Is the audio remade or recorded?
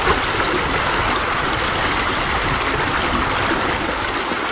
recorded